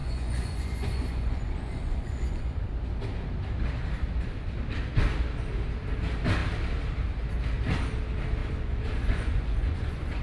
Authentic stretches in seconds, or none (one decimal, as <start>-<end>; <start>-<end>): 2.6-8.4